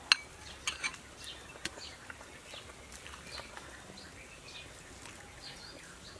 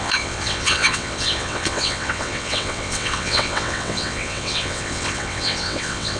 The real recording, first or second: first